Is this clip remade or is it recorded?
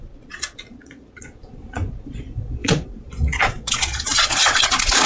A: remade